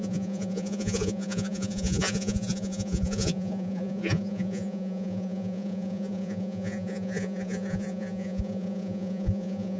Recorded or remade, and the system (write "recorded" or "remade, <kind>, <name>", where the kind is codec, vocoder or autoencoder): remade, vocoder, Vocos